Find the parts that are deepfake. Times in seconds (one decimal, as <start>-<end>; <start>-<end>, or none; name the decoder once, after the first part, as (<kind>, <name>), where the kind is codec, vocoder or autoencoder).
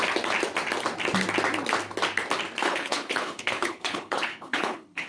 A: 2.6-5.1 (codec, HILCodec)